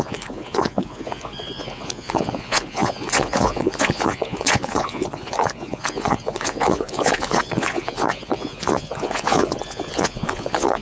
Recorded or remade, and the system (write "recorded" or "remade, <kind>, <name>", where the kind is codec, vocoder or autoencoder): remade, vocoder, Vocos